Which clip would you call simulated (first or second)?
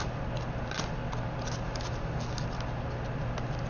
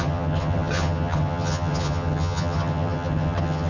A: second